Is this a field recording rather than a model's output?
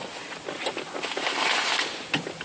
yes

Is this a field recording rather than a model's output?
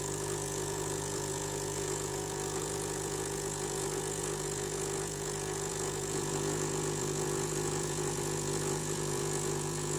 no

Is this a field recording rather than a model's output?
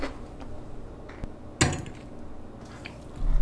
yes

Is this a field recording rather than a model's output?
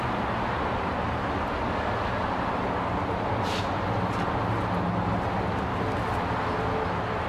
yes